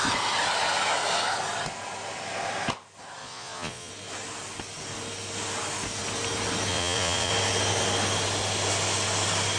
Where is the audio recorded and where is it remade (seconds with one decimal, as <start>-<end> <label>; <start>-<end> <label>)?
0.0-3.2 recorded; 3.2-3.9 remade; 3.9-6.7 recorded; 6.7-7.3 remade; 7.3-9.6 recorded

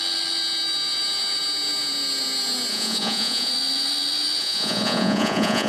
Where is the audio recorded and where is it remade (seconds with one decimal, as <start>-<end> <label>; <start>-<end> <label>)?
0.0-2.7 recorded; 2.7-3.5 remade; 3.5-4.4 recorded; 4.4-5.7 remade